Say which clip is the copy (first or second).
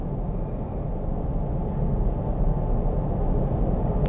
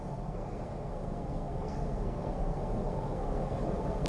second